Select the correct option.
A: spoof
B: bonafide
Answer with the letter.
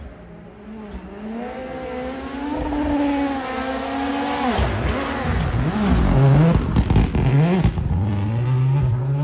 B